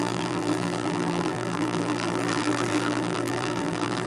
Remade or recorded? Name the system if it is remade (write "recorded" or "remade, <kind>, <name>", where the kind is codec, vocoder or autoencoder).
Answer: remade, vocoder, BigVGAN v2